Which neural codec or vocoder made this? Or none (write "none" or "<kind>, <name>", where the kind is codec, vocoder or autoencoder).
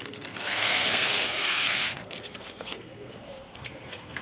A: codec, SNAC